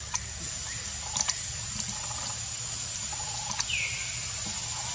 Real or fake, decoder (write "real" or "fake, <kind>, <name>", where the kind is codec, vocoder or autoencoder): real